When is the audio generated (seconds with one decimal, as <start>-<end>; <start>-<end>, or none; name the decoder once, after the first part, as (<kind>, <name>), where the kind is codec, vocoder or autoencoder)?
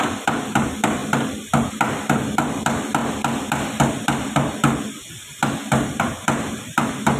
0.0-1.0 (vocoder, BigVGAN v2); 1.7-3.0; 5.0-7.2